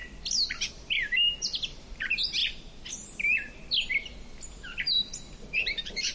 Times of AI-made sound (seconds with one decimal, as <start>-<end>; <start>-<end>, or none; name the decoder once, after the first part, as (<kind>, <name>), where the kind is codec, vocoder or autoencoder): 0.7-2.4 (vocoder, BigVGAN v2); 2.9-3.6; 4.5-6.1